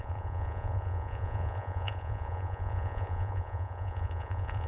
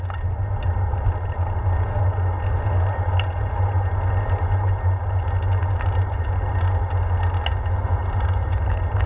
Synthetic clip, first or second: first